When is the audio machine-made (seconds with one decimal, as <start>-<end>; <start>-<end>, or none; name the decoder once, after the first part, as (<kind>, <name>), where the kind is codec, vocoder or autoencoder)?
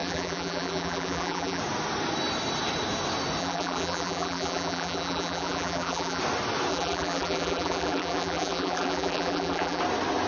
0.0-1.6 (vocoder, BigVGAN v2); 3.4-6.2; 6.7-9.8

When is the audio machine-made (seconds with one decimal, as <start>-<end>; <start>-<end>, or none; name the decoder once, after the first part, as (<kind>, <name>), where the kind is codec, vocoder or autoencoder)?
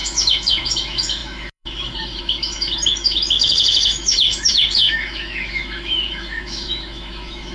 0.0-7.5 (autoencoder, DAC-VAE)